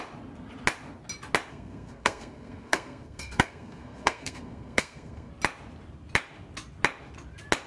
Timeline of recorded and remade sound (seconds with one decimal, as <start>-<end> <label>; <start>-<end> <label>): 0.0-1.5 recorded; 1.5-5.3 remade; 5.3-7.7 recorded